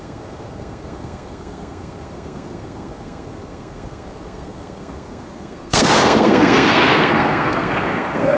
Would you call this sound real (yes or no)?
no